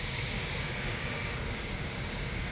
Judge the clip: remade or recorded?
remade